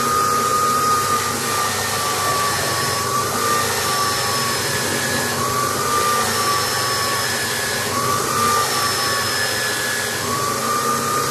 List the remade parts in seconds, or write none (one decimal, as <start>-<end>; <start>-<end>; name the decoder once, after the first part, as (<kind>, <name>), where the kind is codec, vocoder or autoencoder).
0.5-1.1 (vocoder, BigVGAN v2); 2.3-3.3